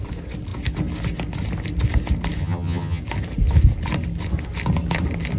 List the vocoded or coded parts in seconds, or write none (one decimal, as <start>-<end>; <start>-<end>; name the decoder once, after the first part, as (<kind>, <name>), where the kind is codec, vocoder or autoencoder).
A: 2.4-3.0 (vocoder, HiFi-GAN)